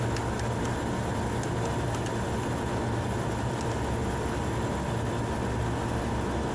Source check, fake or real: real